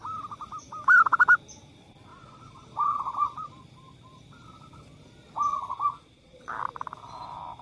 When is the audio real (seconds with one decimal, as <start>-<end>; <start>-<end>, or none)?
0.0-2.1; 3.6-5.5; 6.5-7.6